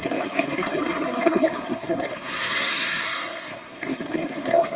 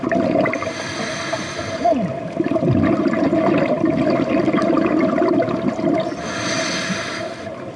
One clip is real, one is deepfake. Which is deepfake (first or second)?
first